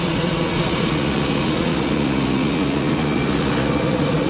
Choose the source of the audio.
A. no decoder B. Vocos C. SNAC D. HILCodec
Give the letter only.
B